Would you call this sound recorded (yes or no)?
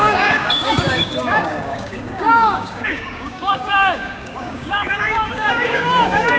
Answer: no